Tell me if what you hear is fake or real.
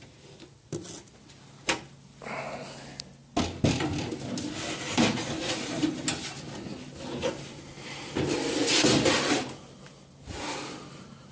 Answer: real